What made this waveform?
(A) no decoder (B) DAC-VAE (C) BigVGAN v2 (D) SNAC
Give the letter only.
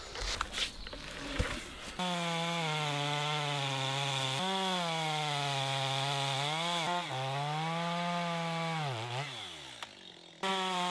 A